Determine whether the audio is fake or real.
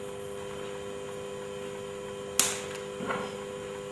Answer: real